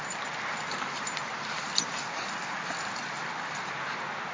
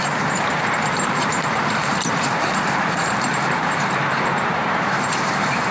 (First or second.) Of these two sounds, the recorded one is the first